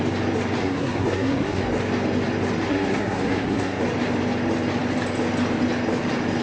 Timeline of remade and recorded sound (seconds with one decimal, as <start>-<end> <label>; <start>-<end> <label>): 0.0-0.6 recorded; 0.6-1.6 remade; 1.6-2.7 recorded; 2.7-3.8 remade; 3.8-6.4 recorded